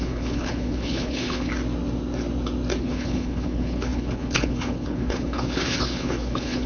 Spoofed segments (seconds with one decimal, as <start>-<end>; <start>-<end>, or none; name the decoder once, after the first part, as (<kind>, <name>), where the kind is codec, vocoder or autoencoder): 0.0-1.5 (codec, HILCodec); 2.8-6.7